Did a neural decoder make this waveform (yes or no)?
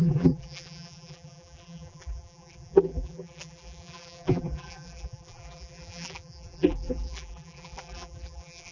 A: yes